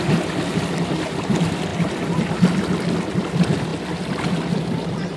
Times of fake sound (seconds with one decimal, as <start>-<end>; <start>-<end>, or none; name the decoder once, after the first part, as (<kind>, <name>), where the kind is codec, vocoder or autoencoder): none